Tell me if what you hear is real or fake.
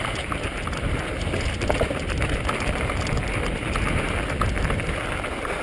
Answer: real